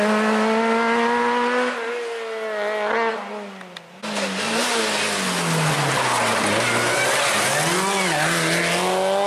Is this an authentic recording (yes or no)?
yes